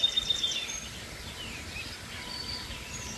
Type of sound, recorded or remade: recorded